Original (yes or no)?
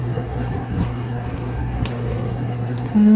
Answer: no